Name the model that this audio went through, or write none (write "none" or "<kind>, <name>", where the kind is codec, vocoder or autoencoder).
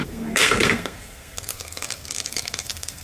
codec, SNAC